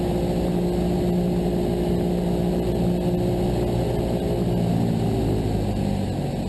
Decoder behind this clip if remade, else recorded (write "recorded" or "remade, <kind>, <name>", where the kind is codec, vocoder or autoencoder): recorded